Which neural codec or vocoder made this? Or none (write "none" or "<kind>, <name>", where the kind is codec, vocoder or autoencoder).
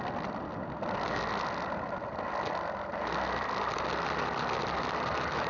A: none